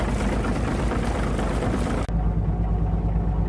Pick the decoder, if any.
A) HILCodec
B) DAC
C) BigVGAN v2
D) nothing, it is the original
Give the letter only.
D